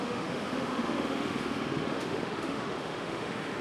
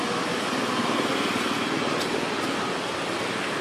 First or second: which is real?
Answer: second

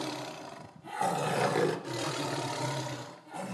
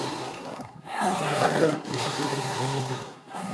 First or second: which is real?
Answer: first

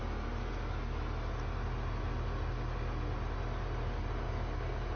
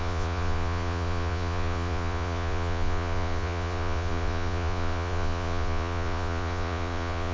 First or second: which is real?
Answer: first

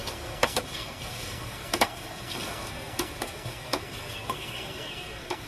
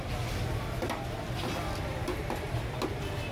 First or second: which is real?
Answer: second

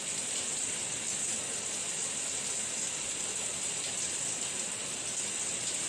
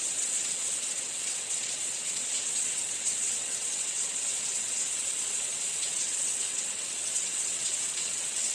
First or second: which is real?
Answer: first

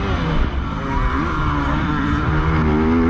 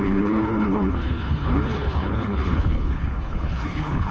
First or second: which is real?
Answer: first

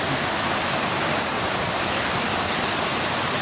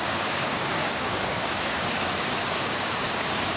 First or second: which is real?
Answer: first